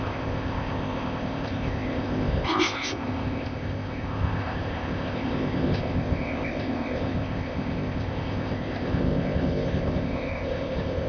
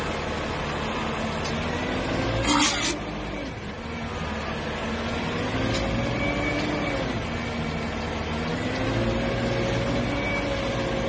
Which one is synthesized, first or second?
first